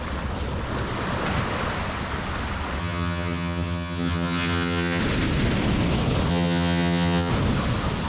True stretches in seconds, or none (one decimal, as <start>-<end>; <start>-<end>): 0.0-2.8; 5.0-6.3; 7.3-8.1

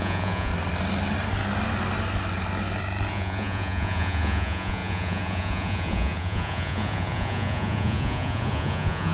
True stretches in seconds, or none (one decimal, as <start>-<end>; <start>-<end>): 0.5-3.1